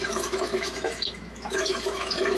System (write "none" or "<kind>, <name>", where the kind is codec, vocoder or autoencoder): autoencoder, DAC-VAE